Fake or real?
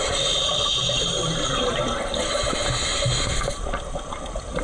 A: real